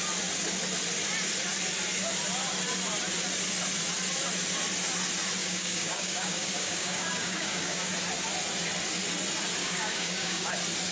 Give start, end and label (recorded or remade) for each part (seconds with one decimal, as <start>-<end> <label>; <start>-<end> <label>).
0.0-5.4 recorded; 5.4-7.9 remade; 7.9-9.6 recorded; 9.6-10.5 remade; 10.5-10.9 recorded

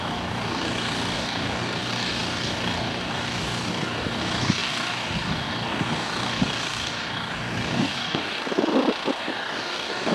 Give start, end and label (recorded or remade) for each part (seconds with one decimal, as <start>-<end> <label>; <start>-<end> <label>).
0.0-8.4 remade; 8.4-9.2 recorded; 9.2-10.1 remade

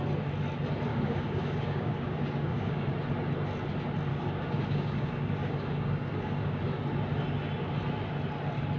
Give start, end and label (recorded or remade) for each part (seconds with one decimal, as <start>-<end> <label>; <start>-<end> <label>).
0.0-0.9 recorded; 0.9-2.9 remade; 2.9-4.1 recorded; 4.1-6.6 remade; 6.6-8.8 recorded

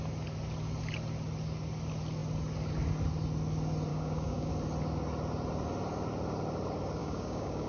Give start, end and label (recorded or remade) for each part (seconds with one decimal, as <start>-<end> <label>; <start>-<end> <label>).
0.0-3.9 recorded; 3.9-4.5 remade; 4.5-7.0 recorded; 7.0-7.7 remade

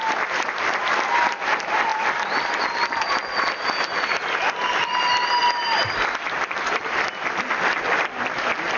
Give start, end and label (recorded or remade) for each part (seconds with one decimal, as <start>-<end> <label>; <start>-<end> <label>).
0.0-8.8 recorded

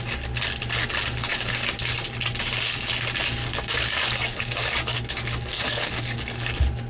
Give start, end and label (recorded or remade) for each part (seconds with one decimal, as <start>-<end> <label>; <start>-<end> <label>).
0.0-1.3 recorded; 1.3-1.8 remade; 1.8-3.4 recorded; 3.4-6.5 remade; 6.5-6.9 recorded

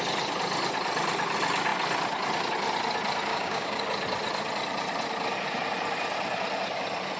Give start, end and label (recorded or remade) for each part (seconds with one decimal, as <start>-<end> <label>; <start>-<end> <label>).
0.0-3.3 recorded; 3.3-3.8 remade; 3.8-7.2 recorded